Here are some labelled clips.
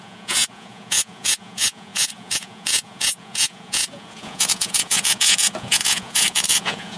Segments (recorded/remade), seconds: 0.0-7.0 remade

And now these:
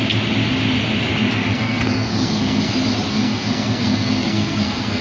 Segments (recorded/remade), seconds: 0.0-1.5 recorded; 1.5-2.7 remade; 2.7-3.1 recorded; 3.1-5.0 remade

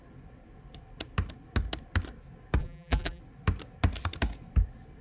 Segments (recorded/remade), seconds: 0.0-2.6 recorded; 2.6-3.2 remade; 3.2-5.0 recorded

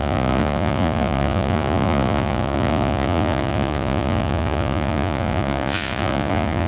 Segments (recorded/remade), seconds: 0.0-6.7 remade

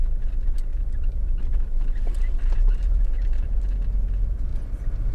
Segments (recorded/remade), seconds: 0.0-0.7 recorded; 0.7-3.6 remade; 3.6-5.1 recorded

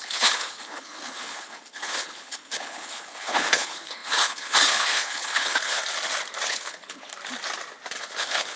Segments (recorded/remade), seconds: 0.0-5.8 remade; 5.8-6.5 recorded; 6.5-7.1 remade; 7.1-8.0 recorded; 8.0-8.6 remade

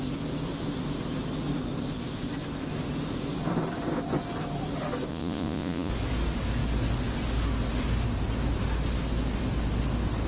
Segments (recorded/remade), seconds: 0.0-5.1 recorded; 5.1-5.9 remade; 5.9-10.3 recorded

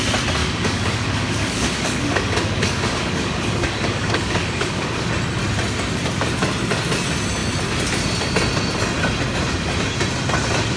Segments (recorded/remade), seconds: 0.0-0.4 recorded; 0.4-5.1 remade; 5.1-10.8 recorded